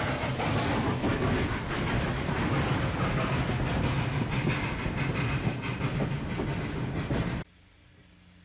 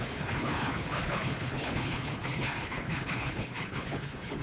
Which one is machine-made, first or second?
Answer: second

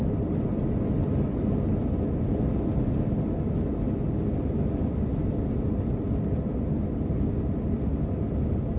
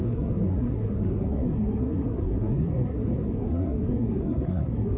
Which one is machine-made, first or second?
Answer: second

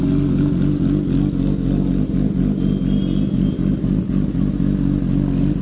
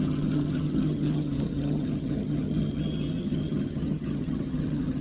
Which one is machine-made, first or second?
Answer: second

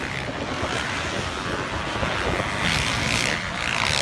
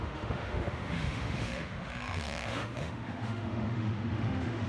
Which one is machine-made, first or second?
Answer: second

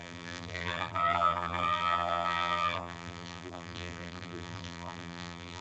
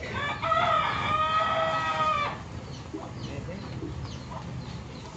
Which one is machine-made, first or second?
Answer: first